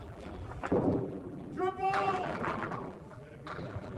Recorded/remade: remade